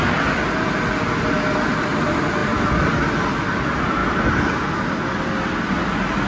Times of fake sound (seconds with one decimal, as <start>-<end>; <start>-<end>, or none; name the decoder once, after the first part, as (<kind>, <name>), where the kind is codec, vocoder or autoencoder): none